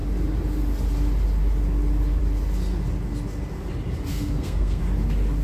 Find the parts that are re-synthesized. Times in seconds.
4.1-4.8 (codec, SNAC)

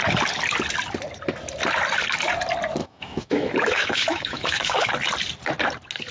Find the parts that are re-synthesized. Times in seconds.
2.8-4.9 (autoencoder, DAC-VAE)

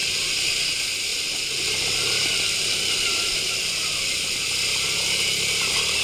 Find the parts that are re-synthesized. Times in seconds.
1.1-4.7 (vocoder, BigVGAN v2)

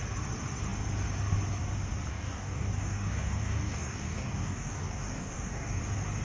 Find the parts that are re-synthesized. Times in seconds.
2.1-5.8 (codec, DAC)

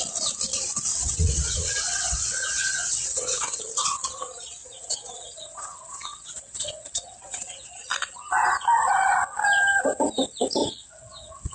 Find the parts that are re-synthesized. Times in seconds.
0.9-3.6 (vocoder, WaveNeXt); 4.6-7.7; 10.6-11.5